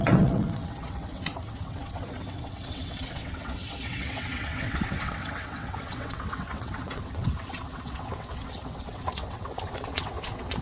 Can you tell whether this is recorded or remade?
remade